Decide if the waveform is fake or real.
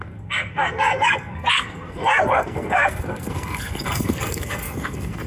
fake